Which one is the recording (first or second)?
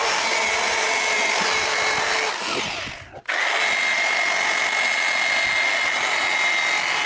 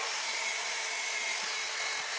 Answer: first